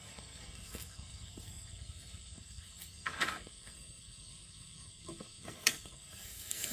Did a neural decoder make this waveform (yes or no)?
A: yes